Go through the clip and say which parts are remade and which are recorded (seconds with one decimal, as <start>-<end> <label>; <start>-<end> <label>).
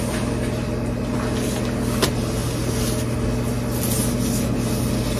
0.0-5.2 recorded